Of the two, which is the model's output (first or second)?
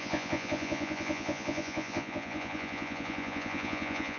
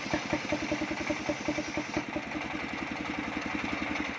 first